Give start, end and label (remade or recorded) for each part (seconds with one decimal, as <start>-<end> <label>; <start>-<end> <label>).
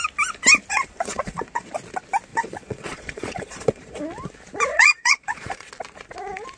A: 0.0-0.7 recorded; 0.7-1.7 remade; 1.7-2.3 recorded; 2.3-4.0 remade; 4.0-4.7 recorded; 4.7-5.7 remade; 5.7-6.6 recorded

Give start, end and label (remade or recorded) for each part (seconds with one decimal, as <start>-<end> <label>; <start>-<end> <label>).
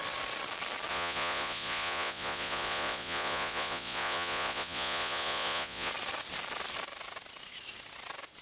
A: 0.0-0.9 recorded; 0.9-5.9 remade; 5.9-8.4 recorded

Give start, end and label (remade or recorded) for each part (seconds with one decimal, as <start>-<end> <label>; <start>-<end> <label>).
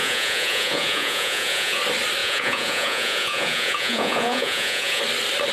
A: 0.0-1.8 remade; 1.8-2.2 recorded; 2.2-5.0 remade; 5.0-5.5 recorded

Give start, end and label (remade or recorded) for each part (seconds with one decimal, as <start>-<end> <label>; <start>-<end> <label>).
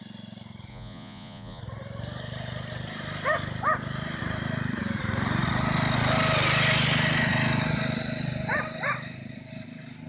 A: 0.0-0.7 recorded; 0.7-1.6 remade; 1.6-10.1 recorded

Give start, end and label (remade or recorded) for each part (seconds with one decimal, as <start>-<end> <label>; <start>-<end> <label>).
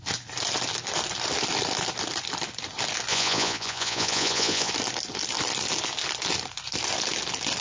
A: 0.0-3.1 recorded; 3.1-4.7 remade; 4.7-7.6 recorded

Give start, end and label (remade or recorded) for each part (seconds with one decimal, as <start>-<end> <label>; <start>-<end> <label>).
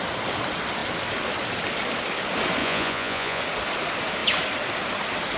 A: 0.0-2.6 recorded; 2.6-3.4 remade; 3.4-5.4 recorded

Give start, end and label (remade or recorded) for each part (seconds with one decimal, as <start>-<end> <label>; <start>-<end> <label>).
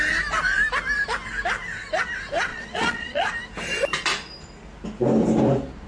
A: 0.0-2.5 recorded; 2.5-3.3 remade; 3.3-5.9 recorded